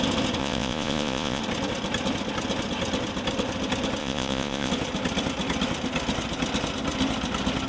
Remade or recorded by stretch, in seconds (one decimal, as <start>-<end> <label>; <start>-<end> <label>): 0.0-0.4 recorded; 0.4-1.4 remade; 1.4-4.0 recorded; 4.0-4.7 remade; 4.7-7.7 recorded